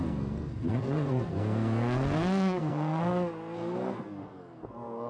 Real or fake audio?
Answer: fake